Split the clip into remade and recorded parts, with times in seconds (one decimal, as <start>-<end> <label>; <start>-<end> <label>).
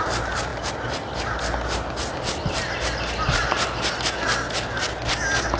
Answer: 0.0-5.6 recorded